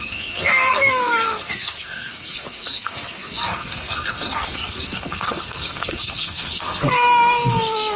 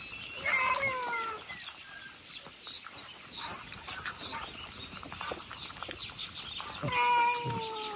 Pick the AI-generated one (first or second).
first